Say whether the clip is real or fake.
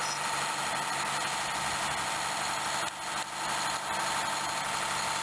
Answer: real